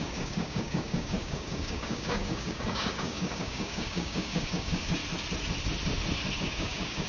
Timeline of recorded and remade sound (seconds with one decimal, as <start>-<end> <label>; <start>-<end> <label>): 0.0-5.0 remade; 5.0-6.4 recorded; 6.4-7.1 remade